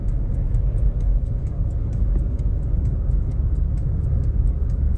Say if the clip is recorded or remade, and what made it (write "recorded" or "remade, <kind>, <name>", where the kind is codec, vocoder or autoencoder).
remade, codec, DAC